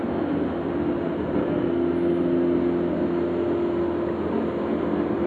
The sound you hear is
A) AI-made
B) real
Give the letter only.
B